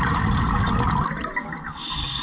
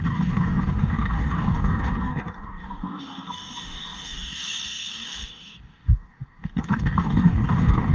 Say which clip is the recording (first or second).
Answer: first